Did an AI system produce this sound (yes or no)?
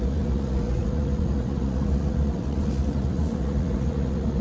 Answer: yes